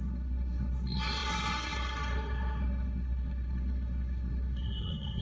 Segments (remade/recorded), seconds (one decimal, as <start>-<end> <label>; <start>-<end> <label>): 0.0-5.2 remade